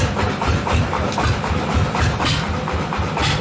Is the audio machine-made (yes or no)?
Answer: no